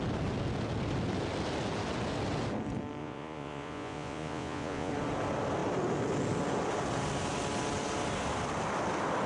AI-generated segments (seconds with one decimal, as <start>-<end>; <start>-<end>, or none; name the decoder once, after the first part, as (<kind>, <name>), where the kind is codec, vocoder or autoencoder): 3.0-4.9 (vocoder, Vocos)